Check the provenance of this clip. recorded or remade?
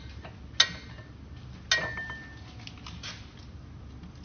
recorded